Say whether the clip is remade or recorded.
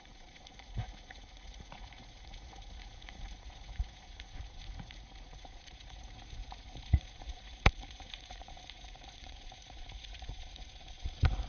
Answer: remade